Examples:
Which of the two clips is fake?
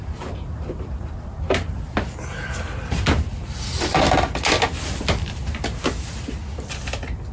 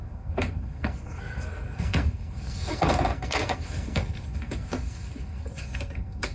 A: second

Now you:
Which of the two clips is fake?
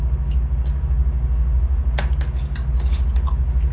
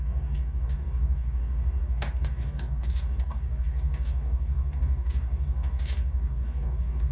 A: second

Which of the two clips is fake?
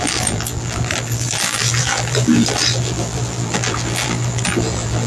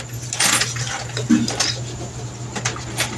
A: first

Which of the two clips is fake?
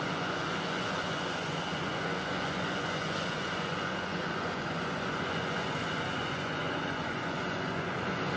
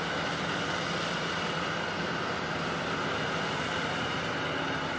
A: first